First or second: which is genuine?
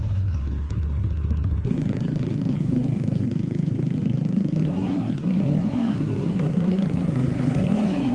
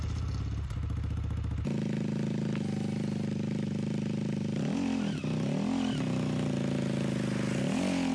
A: second